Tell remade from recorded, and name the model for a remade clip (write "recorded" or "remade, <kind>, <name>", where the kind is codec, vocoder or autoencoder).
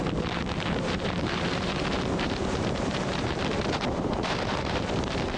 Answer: remade, vocoder, BigVGAN v2